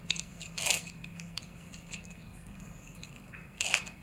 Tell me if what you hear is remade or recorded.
remade